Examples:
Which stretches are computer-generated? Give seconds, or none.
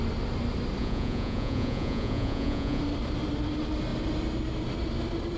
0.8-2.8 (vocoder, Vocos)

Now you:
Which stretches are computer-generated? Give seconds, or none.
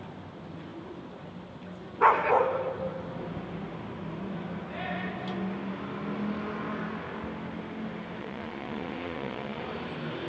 8.2-9.6 (vocoder, Vocos)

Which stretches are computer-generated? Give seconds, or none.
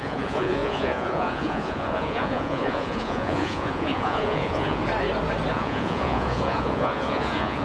0.0-4.8 (vocoder, Vocos); 5.5-7.6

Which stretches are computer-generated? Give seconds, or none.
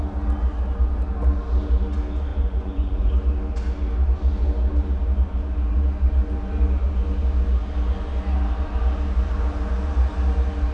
2.3-3.1 (vocoder, Vocos)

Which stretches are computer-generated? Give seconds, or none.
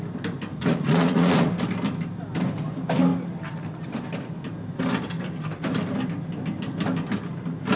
0.5-1.5 (vocoder, Vocos)